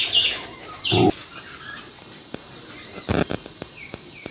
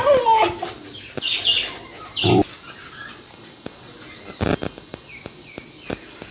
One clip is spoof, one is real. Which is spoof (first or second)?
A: first